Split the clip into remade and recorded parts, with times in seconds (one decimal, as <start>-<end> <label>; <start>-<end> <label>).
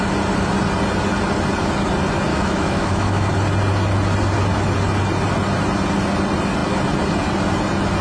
0.0-2.3 recorded; 2.3-3.3 remade; 3.3-8.0 recorded